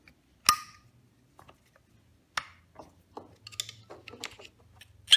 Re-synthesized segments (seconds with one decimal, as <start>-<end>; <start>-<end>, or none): none